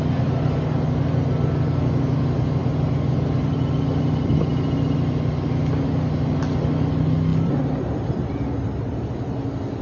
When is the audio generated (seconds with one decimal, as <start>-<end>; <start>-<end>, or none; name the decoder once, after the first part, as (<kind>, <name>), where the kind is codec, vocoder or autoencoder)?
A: none